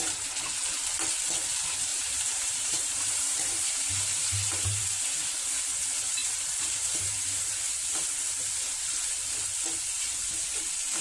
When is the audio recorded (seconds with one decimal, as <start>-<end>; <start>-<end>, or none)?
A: 0.0-1.9; 3.7-4.2; 4.8-6.2; 7.5-11.0